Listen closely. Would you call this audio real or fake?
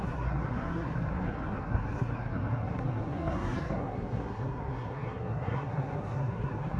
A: fake